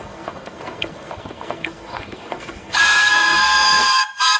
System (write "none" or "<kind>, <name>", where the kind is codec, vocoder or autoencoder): codec, SNAC